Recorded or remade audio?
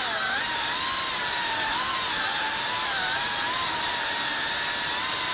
recorded